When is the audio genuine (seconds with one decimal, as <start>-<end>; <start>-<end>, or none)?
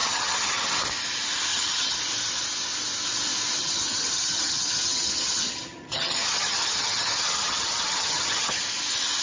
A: 0.7-1.5; 2.0-3.6; 8.6-9.2